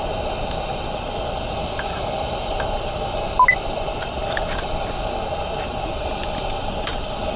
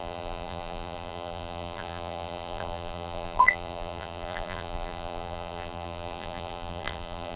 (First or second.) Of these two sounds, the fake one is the second